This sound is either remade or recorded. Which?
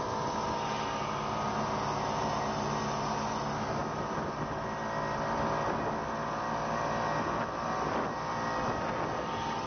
recorded